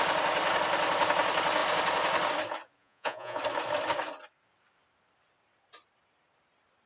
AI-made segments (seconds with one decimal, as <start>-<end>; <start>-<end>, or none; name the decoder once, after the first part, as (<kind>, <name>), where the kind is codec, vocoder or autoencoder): 2.8-3.4 (vocoder, Vocos)